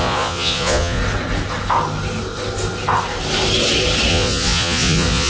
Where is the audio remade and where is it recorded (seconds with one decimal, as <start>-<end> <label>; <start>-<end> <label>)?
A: 0.0-1.0 remade; 1.0-4.1 recorded; 4.1-5.3 remade